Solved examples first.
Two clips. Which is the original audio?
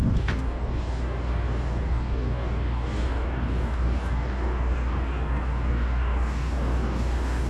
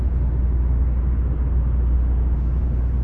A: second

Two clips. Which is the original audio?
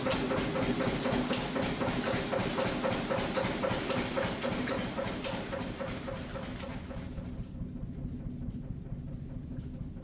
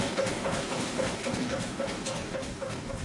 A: first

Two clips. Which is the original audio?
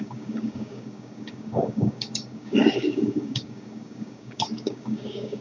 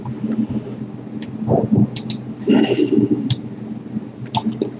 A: second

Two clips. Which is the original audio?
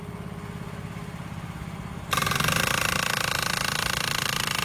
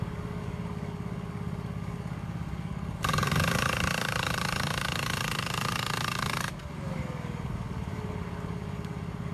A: first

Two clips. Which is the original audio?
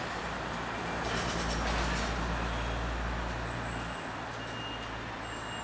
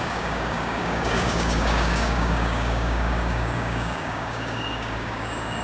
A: first